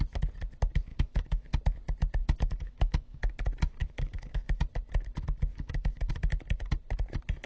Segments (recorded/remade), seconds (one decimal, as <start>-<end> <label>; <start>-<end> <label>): 0.0-0.9 recorded; 0.9-1.5 remade; 1.5-2.2 recorded; 2.2-3.3 remade; 3.3-3.8 recorded; 3.8-4.6 remade; 4.6-5.5 recorded; 5.5-6.1 remade; 6.1-7.5 recorded